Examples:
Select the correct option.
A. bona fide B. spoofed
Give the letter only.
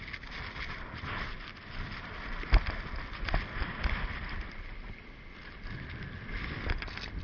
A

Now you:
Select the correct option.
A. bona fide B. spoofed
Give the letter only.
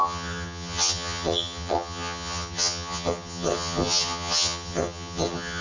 B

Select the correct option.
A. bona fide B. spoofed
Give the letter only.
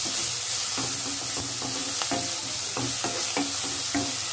A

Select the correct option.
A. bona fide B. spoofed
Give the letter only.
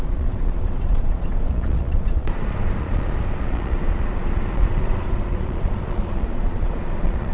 B